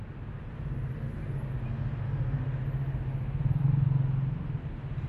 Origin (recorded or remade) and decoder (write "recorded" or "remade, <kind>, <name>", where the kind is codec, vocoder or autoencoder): recorded